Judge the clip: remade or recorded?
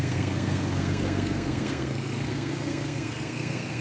remade